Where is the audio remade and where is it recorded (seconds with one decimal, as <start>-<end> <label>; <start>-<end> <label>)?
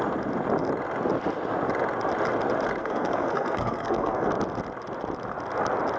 0.0-2.8 recorded; 2.8-4.3 remade; 4.3-6.0 recorded